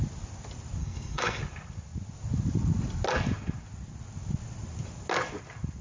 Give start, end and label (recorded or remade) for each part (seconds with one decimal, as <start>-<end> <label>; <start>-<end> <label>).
0.0-0.8 recorded; 0.8-1.4 remade; 1.4-5.8 recorded